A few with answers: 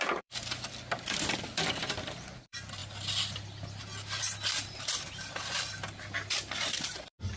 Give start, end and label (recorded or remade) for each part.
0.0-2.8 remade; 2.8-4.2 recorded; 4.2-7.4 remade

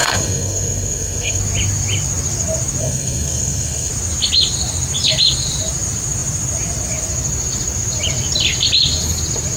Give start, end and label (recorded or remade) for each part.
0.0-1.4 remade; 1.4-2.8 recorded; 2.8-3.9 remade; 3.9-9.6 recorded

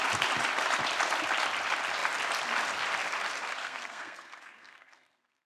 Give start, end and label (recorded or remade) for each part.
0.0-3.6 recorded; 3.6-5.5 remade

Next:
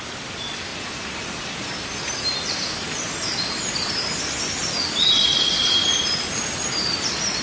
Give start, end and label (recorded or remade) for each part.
0.0-0.7 recorded; 0.7-4.2 remade; 4.2-5.8 recorded; 5.8-7.4 remade

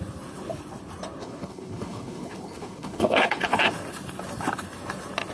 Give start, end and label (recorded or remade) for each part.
0.0-1.2 recorded; 1.2-3.7 remade; 3.7-5.3 recorded

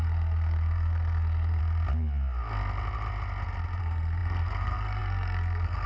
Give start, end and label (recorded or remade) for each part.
0.0-1.6 remade; 1.6-3.8 recorded; 3.8-5.9 remade

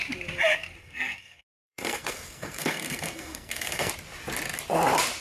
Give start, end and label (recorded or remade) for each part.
0.0-0.8 recorded; 0.8-3.9 remade; 3.9-5.2 recorded